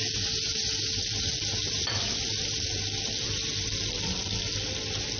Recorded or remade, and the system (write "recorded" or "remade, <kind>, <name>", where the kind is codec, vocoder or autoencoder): recorded